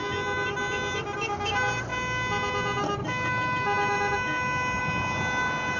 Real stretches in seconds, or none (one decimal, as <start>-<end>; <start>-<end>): 0.0-5.8